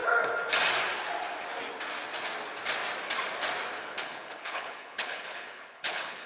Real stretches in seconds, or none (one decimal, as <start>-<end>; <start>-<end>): 0.0-3.8

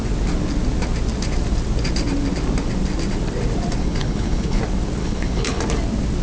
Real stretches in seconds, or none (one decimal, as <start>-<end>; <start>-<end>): 0.0-3.8; 4.6-5.0; 5.6-6.2

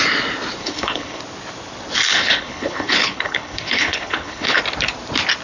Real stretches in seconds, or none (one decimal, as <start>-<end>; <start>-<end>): 0.0-0.6; 1.2-2.1; 4.6-5.4